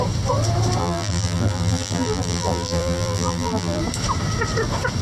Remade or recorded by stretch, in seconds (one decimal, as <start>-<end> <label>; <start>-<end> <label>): 0.0-0.8 recorded; 0.8-3.8 remade; 3.8-5.0 recorded